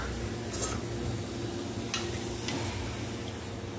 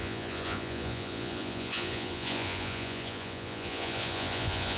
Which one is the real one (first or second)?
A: first